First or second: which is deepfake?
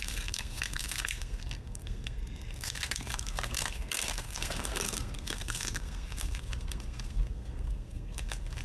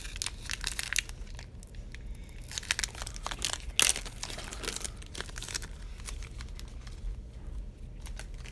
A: first